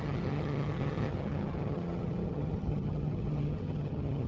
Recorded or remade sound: remade